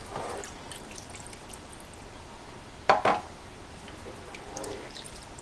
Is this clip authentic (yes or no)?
yes